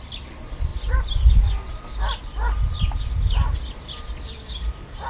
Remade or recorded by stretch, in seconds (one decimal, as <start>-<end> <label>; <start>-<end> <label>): 0.0-5.1 recorded